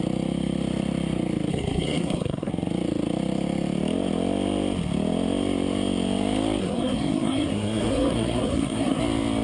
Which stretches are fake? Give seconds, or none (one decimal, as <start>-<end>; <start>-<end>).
1.5-2.5; 6.6-9.0